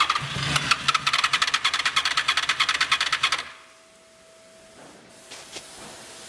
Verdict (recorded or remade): recorded